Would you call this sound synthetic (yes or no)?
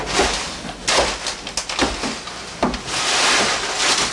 no